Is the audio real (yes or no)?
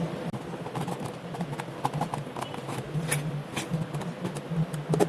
yes